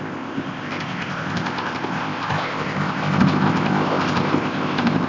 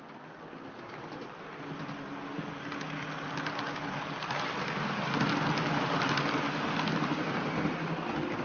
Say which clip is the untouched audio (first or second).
second